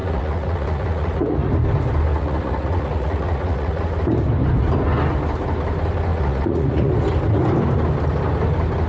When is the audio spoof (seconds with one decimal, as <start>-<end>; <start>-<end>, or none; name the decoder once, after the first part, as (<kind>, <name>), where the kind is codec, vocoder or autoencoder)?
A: 0.0-1.5 (vocoder, Vocos); 2.1-3.8; 6.1-6.9